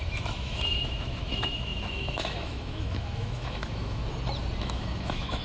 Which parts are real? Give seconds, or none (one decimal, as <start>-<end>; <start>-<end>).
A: 4.0-4.6

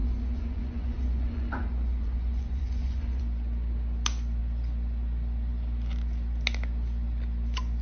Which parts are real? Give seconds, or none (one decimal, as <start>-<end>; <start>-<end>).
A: 3.2-7.8

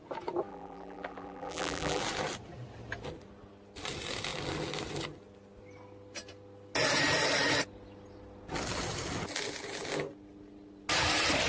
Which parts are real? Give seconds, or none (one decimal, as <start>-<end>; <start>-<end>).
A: 0.0-0.5; 2.0-11.5

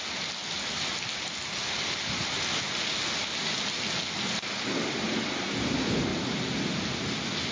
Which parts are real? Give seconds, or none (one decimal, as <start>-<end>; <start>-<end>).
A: 0.0-7.5

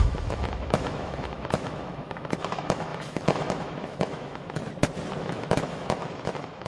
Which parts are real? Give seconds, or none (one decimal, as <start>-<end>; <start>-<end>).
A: 4.6-5.2